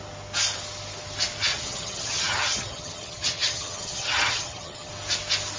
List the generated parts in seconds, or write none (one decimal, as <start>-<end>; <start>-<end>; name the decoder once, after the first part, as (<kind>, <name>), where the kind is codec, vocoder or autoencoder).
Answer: 1.5-4.9 (vocoder, HiFi-GAN)